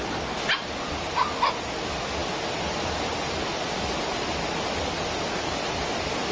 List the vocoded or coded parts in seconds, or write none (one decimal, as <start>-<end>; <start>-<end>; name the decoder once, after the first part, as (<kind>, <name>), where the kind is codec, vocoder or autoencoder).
none